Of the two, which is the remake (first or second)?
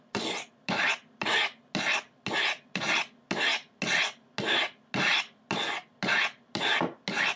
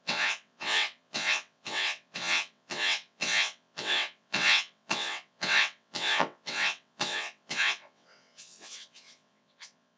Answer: second